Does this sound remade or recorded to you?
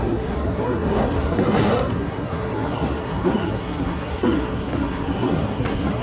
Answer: remade